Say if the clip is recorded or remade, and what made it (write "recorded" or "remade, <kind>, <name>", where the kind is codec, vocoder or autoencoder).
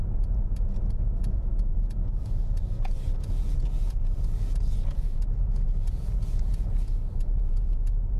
remade, vocoder, Vocos